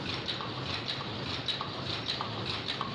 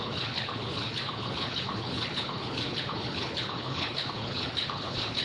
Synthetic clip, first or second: second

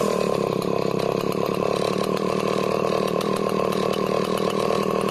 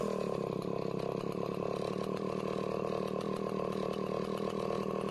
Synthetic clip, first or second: first